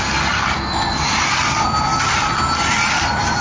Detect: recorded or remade recorded